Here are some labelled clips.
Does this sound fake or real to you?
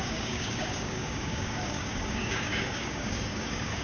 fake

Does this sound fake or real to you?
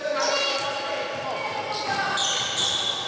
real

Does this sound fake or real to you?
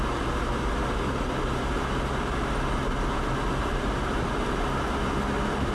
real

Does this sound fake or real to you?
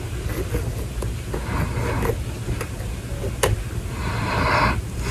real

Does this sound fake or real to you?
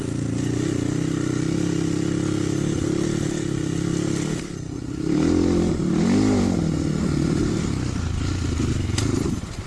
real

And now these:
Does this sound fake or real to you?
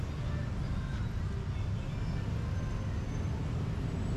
real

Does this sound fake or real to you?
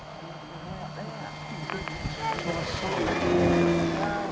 real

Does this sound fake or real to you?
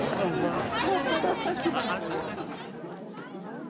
real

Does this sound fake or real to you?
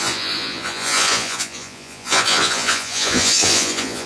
fake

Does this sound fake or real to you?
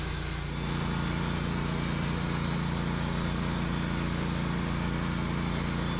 real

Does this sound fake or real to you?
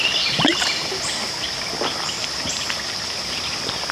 real